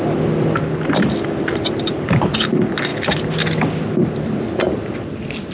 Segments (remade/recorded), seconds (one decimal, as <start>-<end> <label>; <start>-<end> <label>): 0.0-5.5 recorded